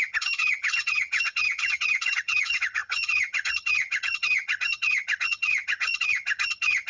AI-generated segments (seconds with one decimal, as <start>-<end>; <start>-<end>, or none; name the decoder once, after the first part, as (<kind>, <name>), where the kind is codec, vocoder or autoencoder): 0.0-6.9 (vocoder, HiFi-GAN)